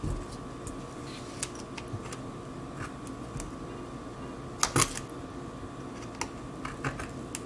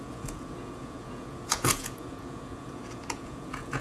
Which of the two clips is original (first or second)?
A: first